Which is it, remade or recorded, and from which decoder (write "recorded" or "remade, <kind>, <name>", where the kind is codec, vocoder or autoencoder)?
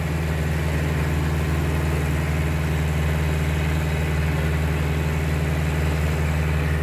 recorded